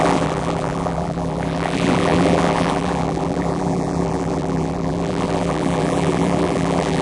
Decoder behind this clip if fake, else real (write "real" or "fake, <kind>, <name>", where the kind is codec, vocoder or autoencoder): fake, vocoder, BigVGAN v2